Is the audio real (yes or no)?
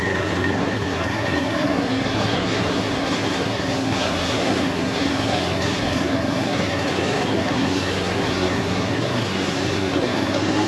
no